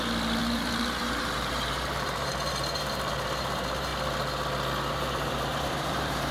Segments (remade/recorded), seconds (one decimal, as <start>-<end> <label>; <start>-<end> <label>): 0.0-3.9 remade; 3.9-4.9 recorded; 4.9-6.3 remade